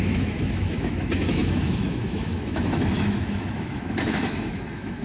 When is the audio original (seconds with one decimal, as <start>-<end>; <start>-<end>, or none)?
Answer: none